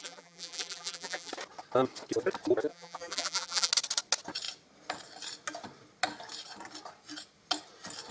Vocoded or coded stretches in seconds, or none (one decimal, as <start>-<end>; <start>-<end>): 0.0-1.3; 2.7-3.7